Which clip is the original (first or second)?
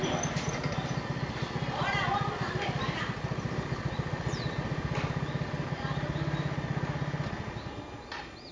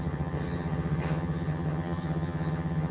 first